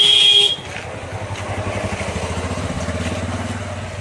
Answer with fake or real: real